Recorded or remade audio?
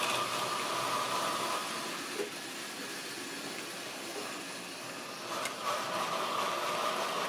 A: recorded